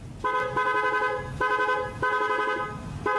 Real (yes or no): yes